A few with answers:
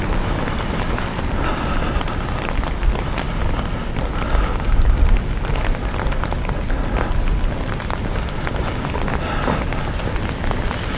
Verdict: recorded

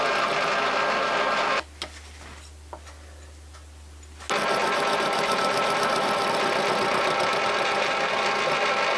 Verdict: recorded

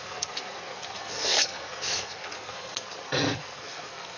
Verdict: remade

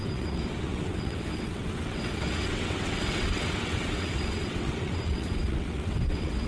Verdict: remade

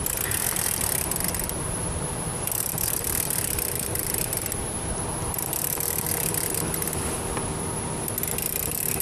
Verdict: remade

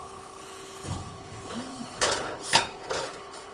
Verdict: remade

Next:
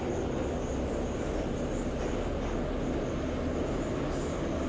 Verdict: recorded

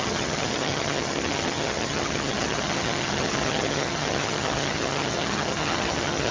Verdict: remade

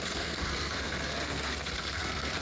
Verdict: remade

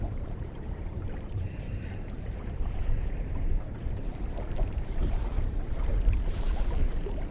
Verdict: remade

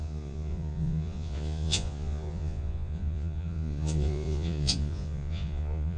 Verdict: remade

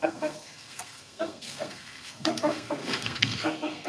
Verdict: remade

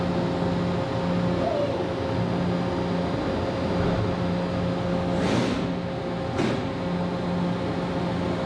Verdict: recorded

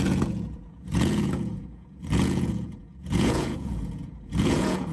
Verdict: remade